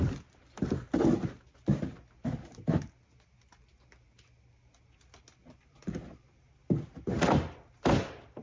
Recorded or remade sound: recorded